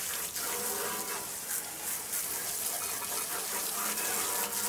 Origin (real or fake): real